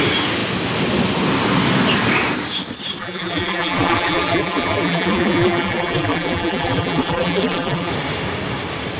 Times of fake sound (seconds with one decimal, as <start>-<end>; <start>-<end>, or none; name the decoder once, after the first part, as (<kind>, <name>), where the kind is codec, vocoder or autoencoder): 3.0-7.9 (vocoder, BigVGAN v2)